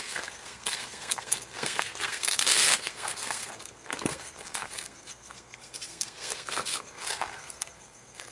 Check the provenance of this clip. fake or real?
fake